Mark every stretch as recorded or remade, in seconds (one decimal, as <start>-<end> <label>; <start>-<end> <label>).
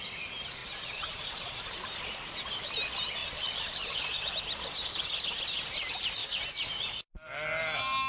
0.0-0.6 recorded; 0.6-1.6 remade; 1.6-3.2 recorded; 3.2-4.3 remade; 4.3-8.1 recorded